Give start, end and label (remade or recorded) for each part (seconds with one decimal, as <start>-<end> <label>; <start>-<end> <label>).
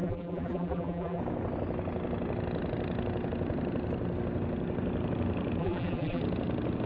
0.0-1.2 remade; 1.2-5.6 recorded; 5.6-6.2 remade; 6.2-6.9 recorded